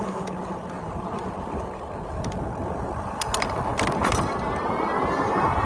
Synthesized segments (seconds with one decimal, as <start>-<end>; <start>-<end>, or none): none